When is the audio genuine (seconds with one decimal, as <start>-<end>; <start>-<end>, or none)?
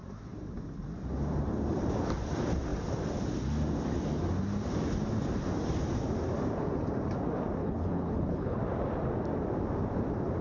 0.0-7.6; 8.6-10.4